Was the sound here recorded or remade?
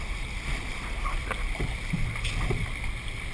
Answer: recorded